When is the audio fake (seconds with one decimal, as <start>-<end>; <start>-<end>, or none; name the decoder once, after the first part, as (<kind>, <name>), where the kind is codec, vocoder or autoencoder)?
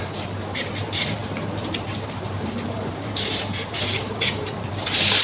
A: 0.0-5.2 (vocoder, BigVGAN v2)